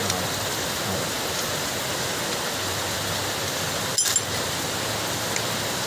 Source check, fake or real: real